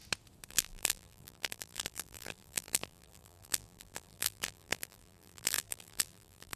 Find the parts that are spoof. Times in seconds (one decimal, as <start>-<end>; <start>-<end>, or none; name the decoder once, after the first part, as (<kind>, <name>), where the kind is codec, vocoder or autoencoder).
0.5-6.6 (vocoder, BigVGAN v2)